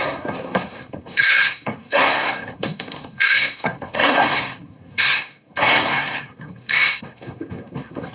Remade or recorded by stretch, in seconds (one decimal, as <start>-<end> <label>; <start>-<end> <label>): 0.0-8.1 remade